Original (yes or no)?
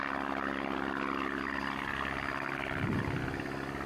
yes